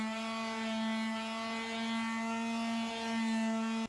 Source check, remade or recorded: recorded